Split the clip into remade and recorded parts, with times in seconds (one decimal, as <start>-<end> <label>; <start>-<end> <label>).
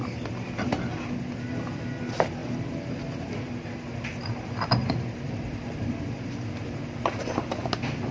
0.0-2.4 recorded; 2.4-6.5 remade; 6.5-8.1 recorded